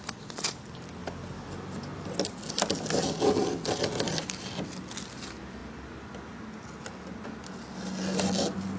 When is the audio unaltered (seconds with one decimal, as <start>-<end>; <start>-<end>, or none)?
0.0-8.8